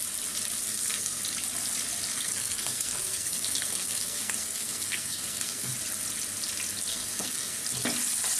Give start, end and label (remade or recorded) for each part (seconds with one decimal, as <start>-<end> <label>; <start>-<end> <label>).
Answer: 0.0-0.6 recorded; 0.6-1.2 remade; 1.2-2.1 recorded; 2.1-5.7 remade; 5.7-6.9 recorded; 6.9-7.6 remade; 7.6-8.4 recorded